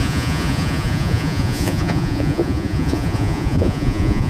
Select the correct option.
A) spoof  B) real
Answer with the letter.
A